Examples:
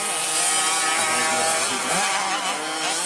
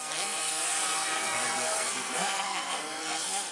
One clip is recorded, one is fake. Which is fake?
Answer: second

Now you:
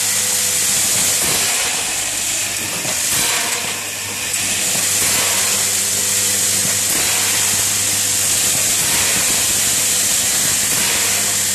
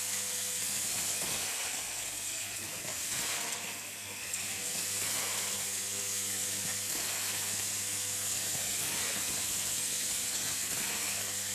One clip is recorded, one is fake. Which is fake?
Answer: second